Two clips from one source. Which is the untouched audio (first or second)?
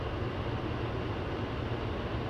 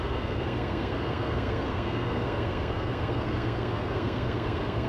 first